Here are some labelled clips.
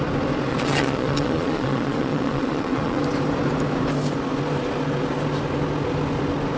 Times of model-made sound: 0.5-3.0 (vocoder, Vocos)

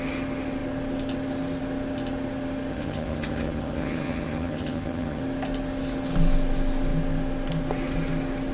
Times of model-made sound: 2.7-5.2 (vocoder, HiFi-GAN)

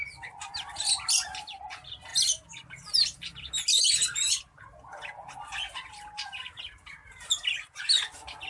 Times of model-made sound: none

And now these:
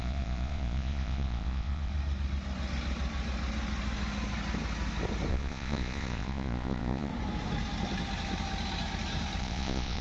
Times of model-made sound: 0.0-1.9 (vocoder, Vocos); 5.3-7.1; 9.4-10.0

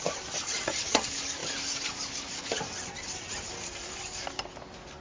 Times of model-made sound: none

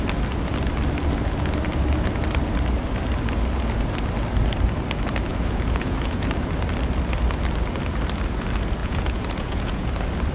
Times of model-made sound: 5.3-6.3 (vocoder, Vocos); 8.8-9.9